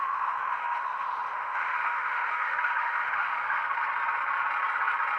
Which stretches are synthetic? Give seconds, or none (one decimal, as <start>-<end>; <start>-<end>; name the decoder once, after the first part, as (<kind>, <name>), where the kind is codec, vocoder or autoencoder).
0.0-3.6 (autoencoder, DAC-VAE)